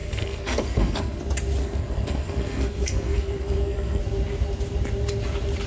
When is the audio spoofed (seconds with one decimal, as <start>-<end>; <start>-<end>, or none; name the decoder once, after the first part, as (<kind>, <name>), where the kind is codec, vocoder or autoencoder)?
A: 0.0-1.2 (codec, SNAC); 1.6-4.0